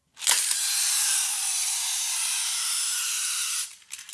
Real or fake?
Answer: real